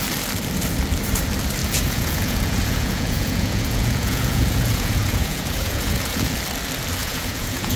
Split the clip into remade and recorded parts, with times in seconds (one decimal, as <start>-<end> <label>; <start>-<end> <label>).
0.0-1.6 recorded; 1.6-6.3 remade; 6.3-7.0 recorded; 7.0-7.8 remade